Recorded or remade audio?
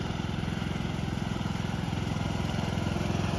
remade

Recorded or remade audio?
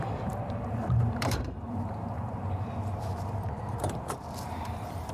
remade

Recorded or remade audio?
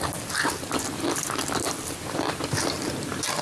recorded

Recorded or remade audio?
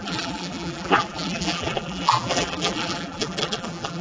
remade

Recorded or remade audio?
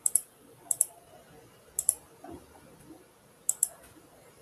remade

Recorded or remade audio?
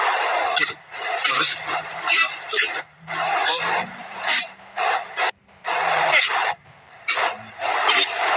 remade